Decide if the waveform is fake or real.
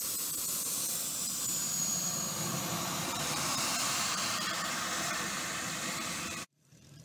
fake